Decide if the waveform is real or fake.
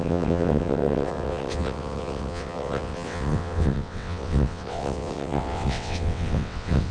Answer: fake